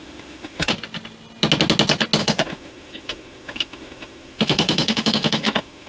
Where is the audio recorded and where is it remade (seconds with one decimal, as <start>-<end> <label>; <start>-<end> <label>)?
0.0-0.7 remade; 0.7-2.2 recorded; 2.2-5.9 remade